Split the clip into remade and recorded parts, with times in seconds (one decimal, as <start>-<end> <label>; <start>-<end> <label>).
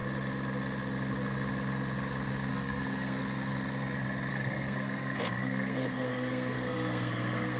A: 0.0-2.5 recorded; 2.5-3.2 remade; 3.2-4.3 recorded; 4.3-7.6 remade